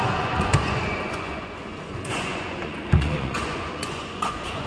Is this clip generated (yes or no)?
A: yes